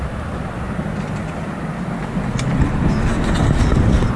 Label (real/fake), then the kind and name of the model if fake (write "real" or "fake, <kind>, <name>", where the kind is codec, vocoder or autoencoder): real